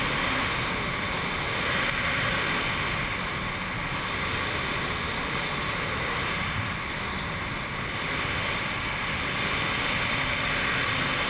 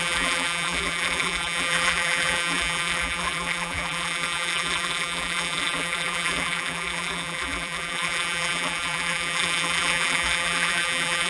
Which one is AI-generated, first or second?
second